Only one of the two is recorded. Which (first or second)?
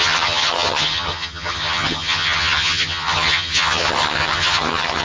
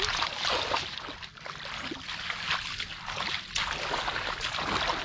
second